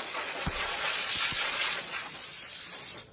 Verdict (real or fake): fake